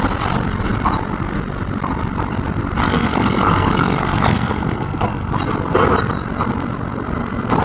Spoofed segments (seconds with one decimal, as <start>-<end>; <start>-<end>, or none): 2.8-5.3